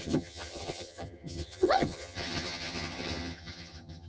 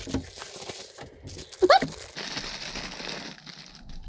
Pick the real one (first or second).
second